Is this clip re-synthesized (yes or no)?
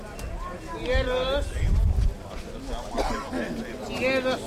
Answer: no